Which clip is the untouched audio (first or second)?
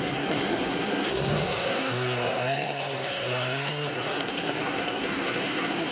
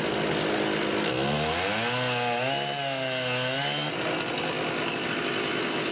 second